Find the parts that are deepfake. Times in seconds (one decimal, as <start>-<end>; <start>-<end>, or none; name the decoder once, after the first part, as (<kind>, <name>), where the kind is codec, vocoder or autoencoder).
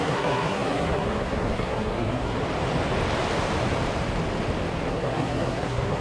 0.0-2.4 (codec, SNAC); 4.9-6.0